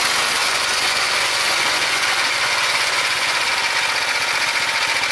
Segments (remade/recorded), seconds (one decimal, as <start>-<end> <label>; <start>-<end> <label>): 0.0-0.4 recorded; 0.4-3.5 remade; 3.5-5.1 recorded